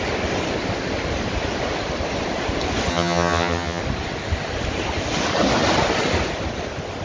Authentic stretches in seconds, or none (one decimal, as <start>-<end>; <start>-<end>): 0.0-2.9; 3.8-7.0